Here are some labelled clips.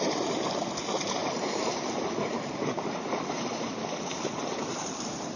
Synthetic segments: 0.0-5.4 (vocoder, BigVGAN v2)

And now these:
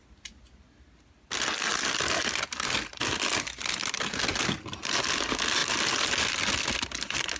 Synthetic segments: 1.7-2.3 (vocoder, BigVGAN v2)